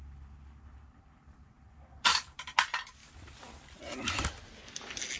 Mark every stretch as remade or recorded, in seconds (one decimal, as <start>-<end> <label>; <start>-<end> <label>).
0.0-5.2 recorded